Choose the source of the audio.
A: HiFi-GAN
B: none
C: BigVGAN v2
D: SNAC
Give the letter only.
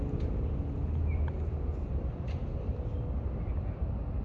B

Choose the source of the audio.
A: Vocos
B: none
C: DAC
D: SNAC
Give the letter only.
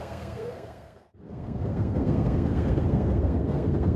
D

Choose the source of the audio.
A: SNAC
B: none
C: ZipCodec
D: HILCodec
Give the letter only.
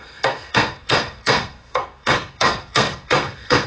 A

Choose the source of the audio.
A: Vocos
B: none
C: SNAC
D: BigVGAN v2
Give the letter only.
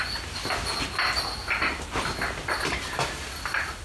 B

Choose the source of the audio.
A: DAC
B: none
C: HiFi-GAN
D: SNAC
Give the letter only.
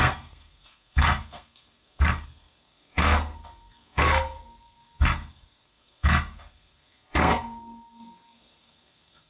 D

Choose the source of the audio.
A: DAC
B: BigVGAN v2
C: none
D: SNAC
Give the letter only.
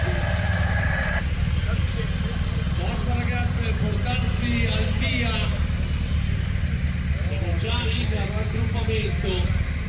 C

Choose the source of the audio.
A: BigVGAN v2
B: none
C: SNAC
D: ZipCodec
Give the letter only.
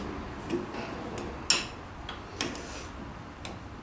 B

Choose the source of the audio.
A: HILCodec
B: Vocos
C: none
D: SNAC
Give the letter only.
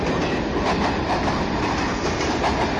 C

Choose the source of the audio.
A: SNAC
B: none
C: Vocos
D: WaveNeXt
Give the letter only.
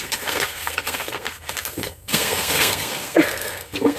A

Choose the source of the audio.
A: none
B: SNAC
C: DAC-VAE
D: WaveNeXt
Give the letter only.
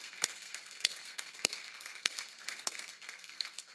B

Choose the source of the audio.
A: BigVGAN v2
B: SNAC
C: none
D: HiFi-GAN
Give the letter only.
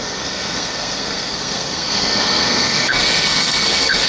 B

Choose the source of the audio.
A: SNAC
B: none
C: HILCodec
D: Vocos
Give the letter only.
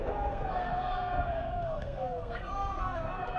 A